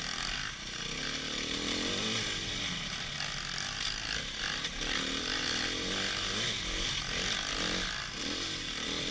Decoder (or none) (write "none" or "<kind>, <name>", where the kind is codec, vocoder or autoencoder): none